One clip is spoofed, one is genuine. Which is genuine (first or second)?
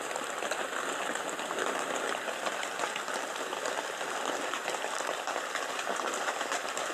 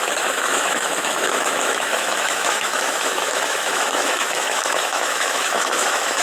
first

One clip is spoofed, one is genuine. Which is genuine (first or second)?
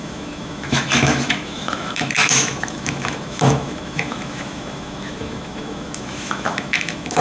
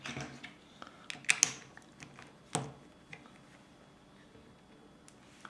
second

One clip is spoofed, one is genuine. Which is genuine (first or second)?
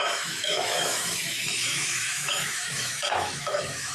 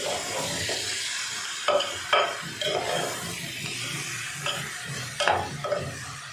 second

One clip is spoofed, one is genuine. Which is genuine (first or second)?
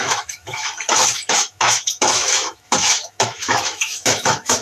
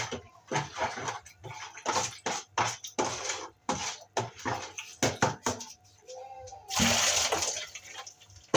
second